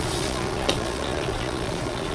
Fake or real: fake